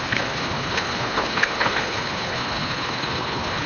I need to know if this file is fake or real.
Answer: fake